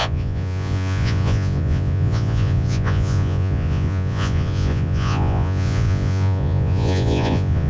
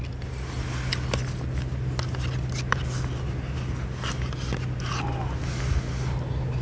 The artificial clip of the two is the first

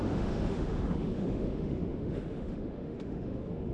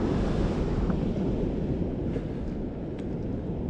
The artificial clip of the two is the first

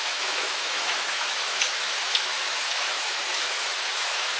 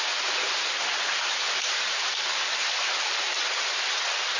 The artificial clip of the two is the first